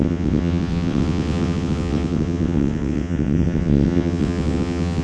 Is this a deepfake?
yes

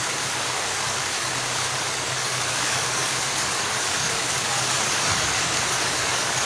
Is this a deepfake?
yes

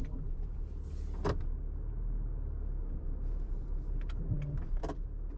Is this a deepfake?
no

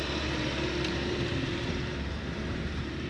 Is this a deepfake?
yes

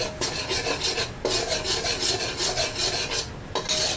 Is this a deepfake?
no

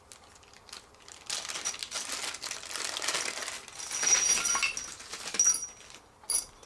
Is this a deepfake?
no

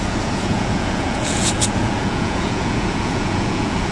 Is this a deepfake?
yes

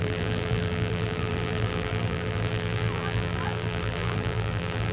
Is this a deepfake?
yes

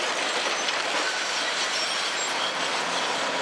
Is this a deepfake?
no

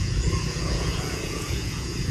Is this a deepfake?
yes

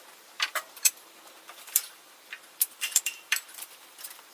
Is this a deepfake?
yes